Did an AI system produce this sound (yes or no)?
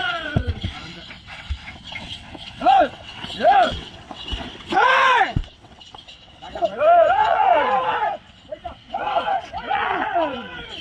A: yes